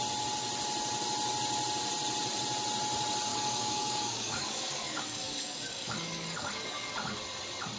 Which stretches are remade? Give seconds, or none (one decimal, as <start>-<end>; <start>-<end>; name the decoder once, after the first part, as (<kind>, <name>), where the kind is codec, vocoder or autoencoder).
3.3-6.9 (codec, DAC)